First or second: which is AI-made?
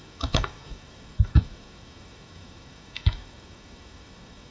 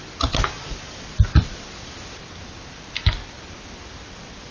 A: first